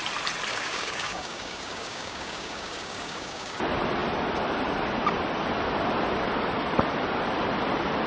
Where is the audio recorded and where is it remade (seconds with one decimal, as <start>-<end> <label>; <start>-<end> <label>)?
0.0-0.5 recorded; 0.5-3.6 remade; 3.6-8.1 recorded